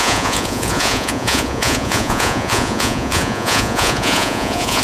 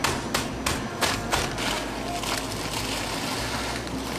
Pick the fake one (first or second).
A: first